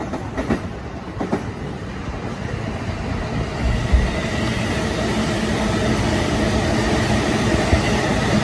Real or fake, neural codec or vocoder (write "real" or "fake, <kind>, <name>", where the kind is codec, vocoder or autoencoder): real